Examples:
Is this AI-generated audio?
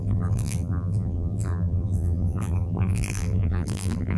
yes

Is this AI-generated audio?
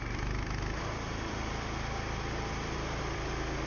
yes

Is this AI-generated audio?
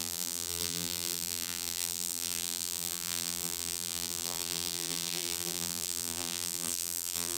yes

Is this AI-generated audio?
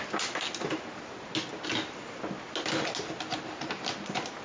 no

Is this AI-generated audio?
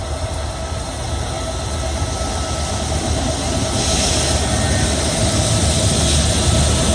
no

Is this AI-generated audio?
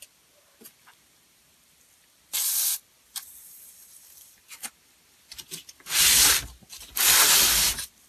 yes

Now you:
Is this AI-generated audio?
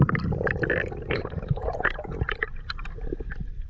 no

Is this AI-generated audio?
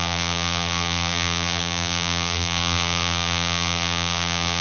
yes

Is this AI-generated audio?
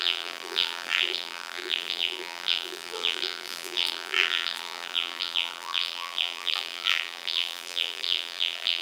yes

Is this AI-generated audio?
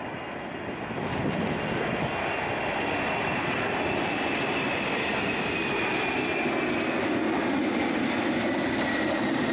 no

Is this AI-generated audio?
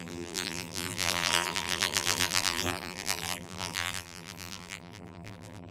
yes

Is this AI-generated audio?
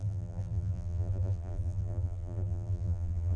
yes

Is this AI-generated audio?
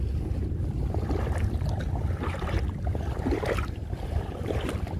yes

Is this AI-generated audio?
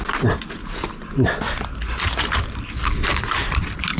no